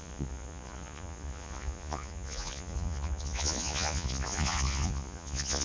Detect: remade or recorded remade